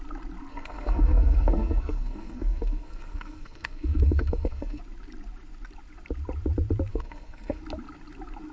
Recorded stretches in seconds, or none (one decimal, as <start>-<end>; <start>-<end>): 0.0-0.5; 4.8-6.9; 7.6-8.5